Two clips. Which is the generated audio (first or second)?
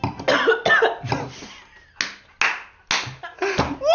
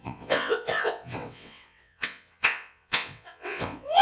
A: second